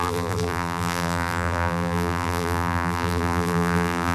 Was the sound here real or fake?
fake